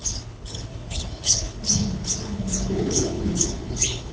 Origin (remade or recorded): remade